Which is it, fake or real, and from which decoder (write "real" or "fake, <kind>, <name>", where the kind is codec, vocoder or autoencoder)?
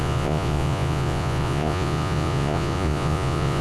fake, vocoder, Vocos